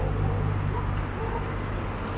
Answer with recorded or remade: recorded